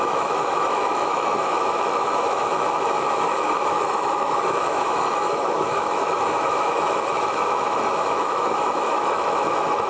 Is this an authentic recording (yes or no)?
no